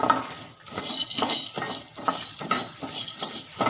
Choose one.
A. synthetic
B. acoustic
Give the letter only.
B